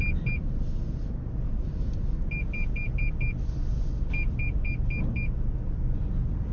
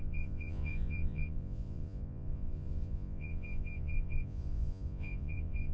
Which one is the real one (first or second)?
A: first